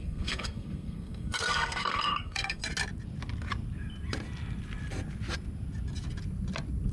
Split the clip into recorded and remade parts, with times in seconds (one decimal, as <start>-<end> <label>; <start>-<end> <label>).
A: 0.0-2.6 remade; 2.6-6.9 recorded